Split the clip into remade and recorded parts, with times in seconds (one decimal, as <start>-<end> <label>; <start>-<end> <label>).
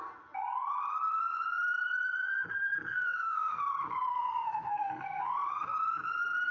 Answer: 0.0-2.9 recorded; 2.9-3.6 remade; 3.6-4.1 recorded; 4.1-5.2 remade; 5.2-6.5 recorded